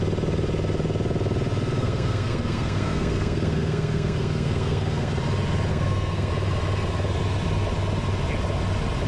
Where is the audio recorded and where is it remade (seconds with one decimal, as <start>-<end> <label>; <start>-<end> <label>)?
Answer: 0.0-1.8 recorded; 1.8-5.1 remade; 5.1-5.7 recorded; 5.7-6.3 remade; 6.3-9.1 recorded